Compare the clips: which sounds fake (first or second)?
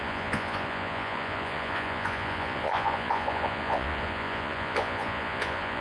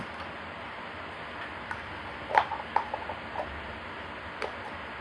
first